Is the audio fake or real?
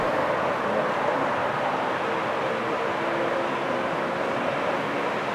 real